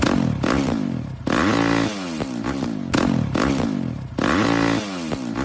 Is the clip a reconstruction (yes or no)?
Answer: no